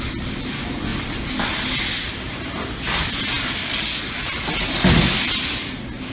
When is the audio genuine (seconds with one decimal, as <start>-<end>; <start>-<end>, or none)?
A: 0.0-3.6; 4.1-6.1